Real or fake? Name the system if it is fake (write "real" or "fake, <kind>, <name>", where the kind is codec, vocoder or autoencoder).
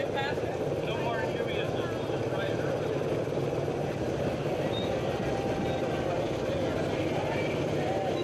real